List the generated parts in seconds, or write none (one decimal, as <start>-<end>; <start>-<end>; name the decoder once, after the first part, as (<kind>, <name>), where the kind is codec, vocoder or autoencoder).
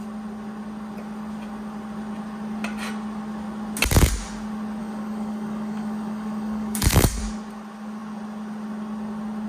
4.8-7.2 (codec, DAC)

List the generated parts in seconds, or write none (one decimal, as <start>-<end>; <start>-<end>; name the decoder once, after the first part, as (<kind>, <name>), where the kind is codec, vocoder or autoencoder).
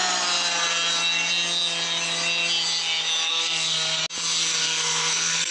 3.3-4.0 (codec, SNAC); 4.6-5.5